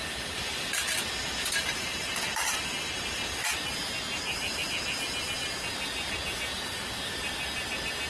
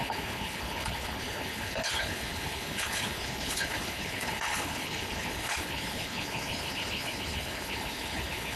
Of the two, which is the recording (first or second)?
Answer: first